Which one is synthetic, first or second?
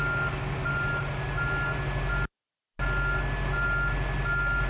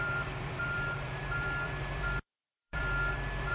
second